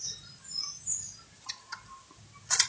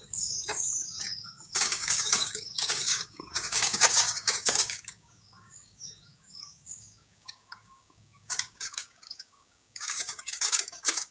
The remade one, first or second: second